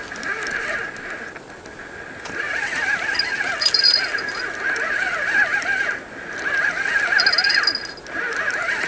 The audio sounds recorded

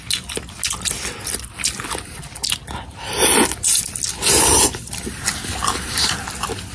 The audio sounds recorded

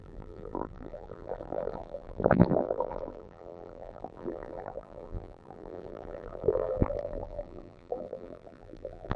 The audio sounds remade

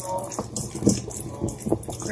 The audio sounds recorded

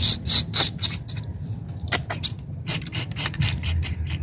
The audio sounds remade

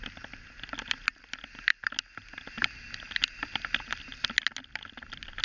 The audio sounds recorded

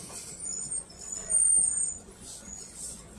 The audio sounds remade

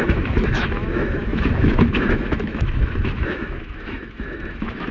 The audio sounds remade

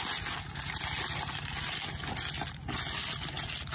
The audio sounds recorded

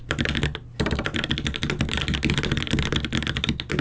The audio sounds recorded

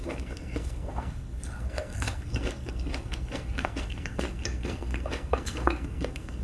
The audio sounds remade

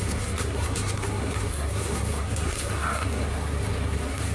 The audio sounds remade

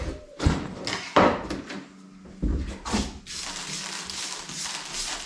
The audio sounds recorded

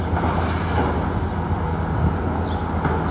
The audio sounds recorded